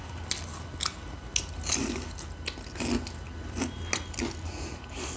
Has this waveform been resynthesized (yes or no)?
no